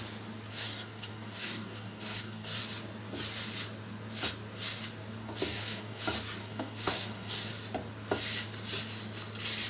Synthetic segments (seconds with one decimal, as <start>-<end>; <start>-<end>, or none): 0.5-2.6; 5.2-6.0; 6.4-7.5